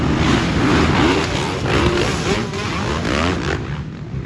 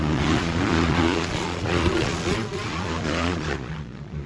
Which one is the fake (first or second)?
second